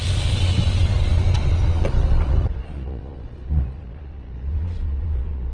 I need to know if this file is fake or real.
fake